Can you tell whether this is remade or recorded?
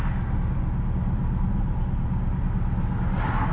recorded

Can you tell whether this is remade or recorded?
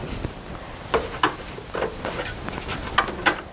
recorded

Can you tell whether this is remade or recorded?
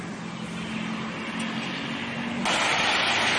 recorded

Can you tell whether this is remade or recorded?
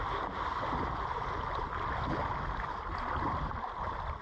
recorded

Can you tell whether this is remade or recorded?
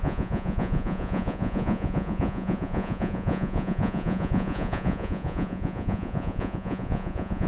remade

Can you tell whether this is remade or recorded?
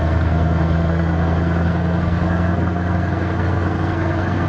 remade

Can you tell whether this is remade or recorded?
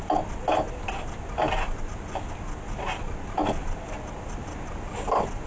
recorded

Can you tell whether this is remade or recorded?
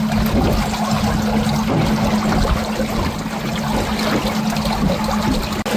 recorded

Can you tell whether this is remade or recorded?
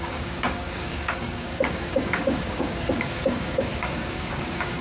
remade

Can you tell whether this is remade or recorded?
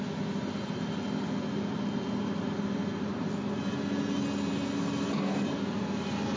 recorded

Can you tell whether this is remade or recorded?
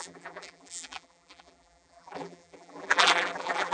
remade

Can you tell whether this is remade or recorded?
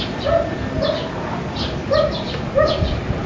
recorded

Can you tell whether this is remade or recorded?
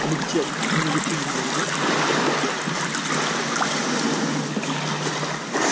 recorded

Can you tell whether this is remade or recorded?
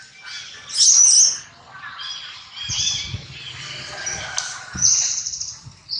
recorded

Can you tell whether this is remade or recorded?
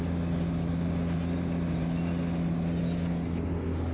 recorded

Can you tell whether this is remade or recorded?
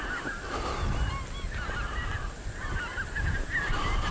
recorded